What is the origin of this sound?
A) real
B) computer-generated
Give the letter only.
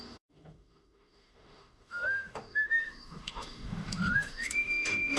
B